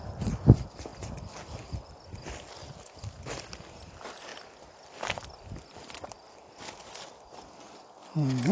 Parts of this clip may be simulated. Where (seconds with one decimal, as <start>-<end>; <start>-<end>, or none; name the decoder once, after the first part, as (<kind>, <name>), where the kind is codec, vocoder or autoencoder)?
none